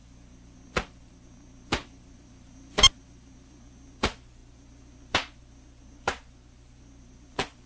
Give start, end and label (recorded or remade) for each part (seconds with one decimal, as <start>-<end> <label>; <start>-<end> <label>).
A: 0.0-7.7 recorded